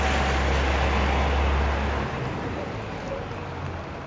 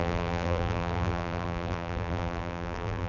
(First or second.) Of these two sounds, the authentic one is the first